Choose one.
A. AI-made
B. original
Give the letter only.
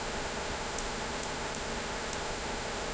A